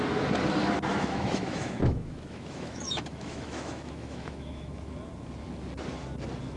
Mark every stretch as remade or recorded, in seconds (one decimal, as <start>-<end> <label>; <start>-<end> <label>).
0.0-0.9 recorded; 0.9-4.9 remade; 4.9-6.6 recorded